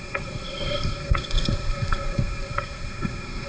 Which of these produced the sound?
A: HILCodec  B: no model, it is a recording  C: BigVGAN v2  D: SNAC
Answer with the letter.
D